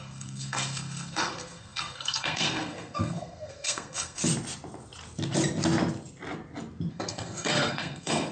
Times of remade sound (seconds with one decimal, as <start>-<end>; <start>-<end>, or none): 0.0-4.2; 6.9-8.3